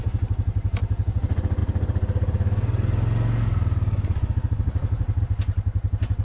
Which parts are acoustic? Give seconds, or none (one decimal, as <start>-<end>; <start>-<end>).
0.0-6.2